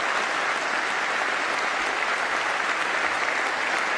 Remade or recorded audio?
recorded